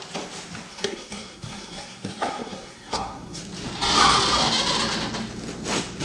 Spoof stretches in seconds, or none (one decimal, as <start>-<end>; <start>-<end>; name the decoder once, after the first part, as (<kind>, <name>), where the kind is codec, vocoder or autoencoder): 0.7-3.4 (codec, SNAC)